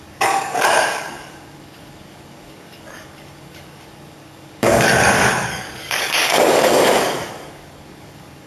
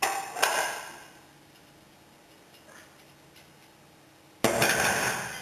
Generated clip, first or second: first